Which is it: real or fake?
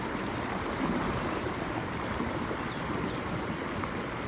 real